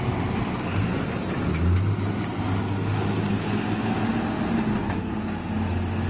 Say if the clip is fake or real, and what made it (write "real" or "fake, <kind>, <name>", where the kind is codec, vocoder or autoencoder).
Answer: real